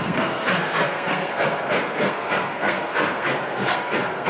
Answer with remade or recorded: remade